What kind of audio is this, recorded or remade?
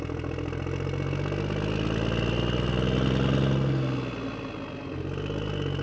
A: recorded